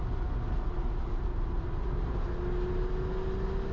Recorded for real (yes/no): yes